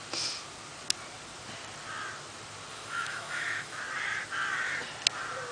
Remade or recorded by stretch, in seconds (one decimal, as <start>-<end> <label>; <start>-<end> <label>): 0.0-2.7 recorded; 2.7-3.8 remade; 3.8-5.5 recorded